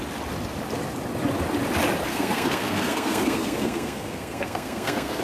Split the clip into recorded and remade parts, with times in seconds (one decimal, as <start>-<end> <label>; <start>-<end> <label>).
0.0-2.1 recorded; 2.1-5.2 remade